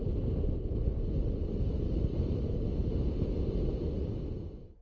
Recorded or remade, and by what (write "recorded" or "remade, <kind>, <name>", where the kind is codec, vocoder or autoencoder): recorded